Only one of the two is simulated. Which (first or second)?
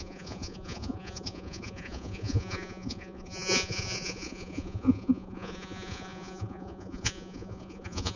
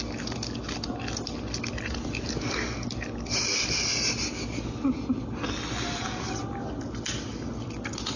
first